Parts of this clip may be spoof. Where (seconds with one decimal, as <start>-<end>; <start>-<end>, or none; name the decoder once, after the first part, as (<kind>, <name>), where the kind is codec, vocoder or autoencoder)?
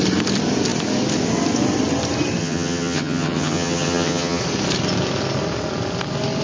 2.4-4.4 (vocoder, HiFi-GAN)